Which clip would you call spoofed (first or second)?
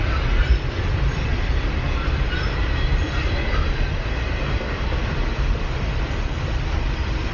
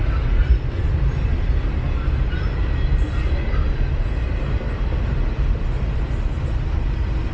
first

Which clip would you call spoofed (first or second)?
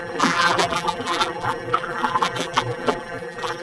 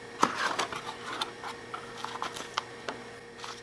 first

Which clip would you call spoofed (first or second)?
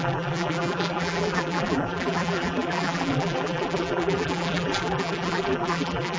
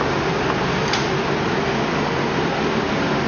first